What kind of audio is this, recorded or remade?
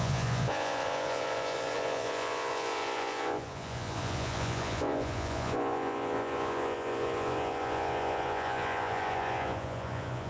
remade